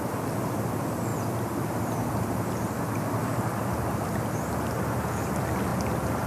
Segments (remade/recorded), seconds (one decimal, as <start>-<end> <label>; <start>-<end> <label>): 0.0-5.7 recorded; 5.7-6.3 remade